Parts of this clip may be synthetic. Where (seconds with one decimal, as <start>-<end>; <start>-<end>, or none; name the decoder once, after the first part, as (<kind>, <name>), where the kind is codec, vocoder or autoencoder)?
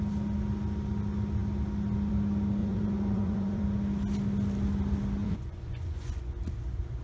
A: 2.6-3.6 (vocoder, Vocos); 5.2-6.4